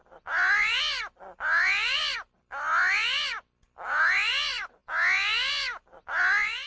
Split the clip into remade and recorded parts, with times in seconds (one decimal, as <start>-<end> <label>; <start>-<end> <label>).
0.0-6.7 recorded